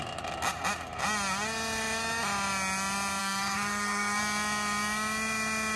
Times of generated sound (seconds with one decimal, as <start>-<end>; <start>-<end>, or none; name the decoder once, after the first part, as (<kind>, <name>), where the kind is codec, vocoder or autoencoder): 3.2-4.2 (codec, SNAC)